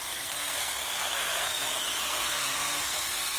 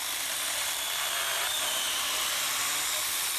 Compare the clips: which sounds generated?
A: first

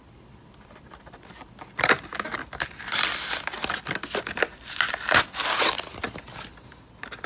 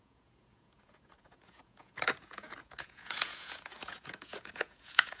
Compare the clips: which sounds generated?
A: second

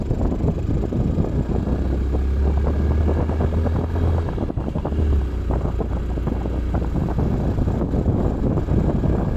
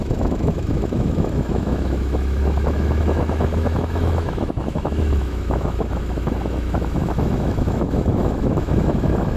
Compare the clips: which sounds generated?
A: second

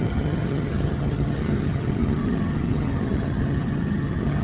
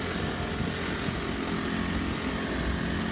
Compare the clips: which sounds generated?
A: first